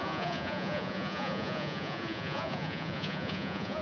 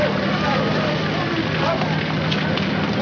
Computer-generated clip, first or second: first